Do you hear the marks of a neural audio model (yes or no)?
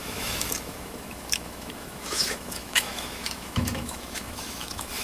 yes